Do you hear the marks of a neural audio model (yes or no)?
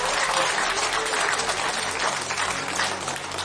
no